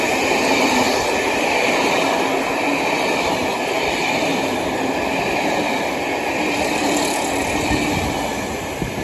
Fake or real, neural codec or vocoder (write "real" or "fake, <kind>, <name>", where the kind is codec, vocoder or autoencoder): real